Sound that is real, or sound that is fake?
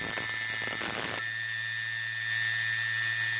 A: real